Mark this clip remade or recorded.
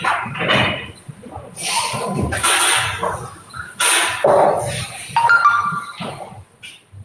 recorded